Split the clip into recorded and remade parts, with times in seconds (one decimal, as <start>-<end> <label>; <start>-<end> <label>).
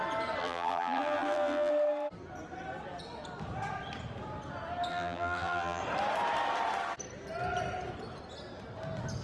0.0-0.4 recorded; 0.4-1.7 remade; 1.7-4.9 recorded; 4.9-5.8 remade; 5.8-9.2 recorded